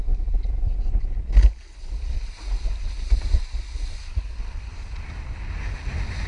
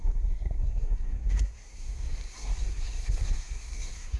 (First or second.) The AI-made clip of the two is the second